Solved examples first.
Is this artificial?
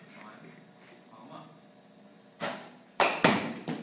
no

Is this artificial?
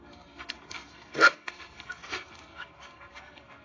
yes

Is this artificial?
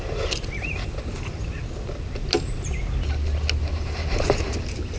no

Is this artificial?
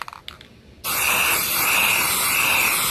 no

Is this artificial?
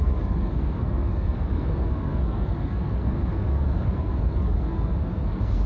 yes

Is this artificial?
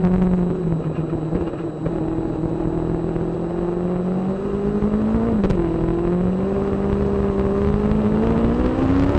no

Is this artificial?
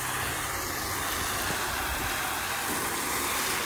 no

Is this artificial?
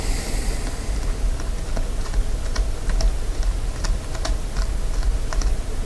no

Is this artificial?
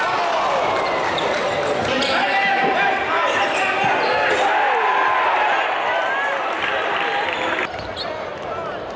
no